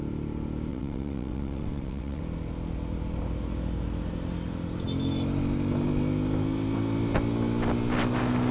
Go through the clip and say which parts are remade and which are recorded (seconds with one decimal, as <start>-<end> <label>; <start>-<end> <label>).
0.0-0.7 recorded; 0.7-2.2 remade; 2.2-8.5 recorded